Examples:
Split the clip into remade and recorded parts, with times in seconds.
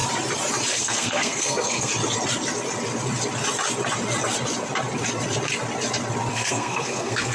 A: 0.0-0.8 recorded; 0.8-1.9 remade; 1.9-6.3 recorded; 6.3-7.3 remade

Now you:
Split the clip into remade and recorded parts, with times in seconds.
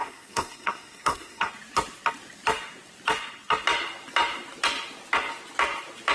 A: 0.0-1.5 remade; 1.5-6.1 recorded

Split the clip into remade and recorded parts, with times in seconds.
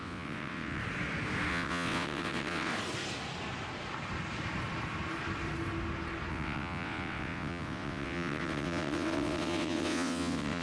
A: 0.0-0.8 remade; 0.8-1.5 recorded; 1.5-2.7 remade; 2.7-6.3 recorded; 6.3-10.6 remade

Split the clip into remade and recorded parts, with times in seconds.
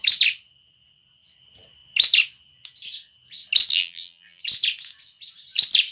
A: 0.0-3.7 recorded; 3.7-4.4 remade; 4.4-5.9 recorded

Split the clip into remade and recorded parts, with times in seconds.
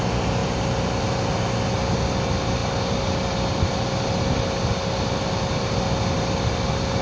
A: 0.0-7.0 recorded